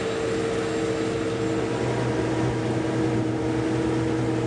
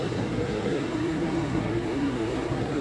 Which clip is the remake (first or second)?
second